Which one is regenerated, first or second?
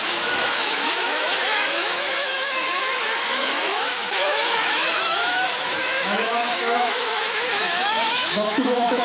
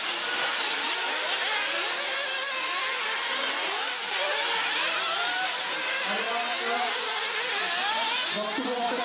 first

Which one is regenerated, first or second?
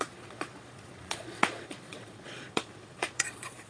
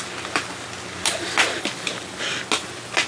first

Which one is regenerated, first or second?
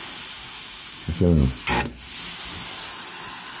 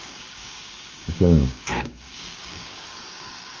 second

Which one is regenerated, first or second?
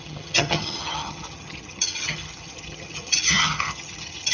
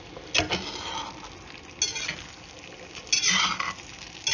first